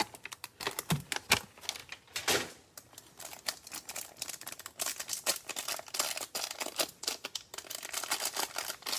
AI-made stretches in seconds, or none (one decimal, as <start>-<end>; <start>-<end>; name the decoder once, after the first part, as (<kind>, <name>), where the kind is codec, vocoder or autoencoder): none